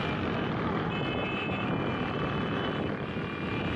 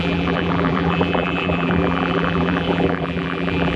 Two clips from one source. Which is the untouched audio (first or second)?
first